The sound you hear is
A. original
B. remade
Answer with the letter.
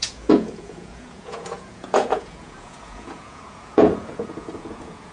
B